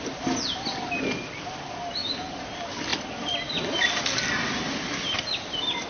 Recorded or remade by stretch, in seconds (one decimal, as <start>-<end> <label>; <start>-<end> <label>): 0.0-5.9 recorded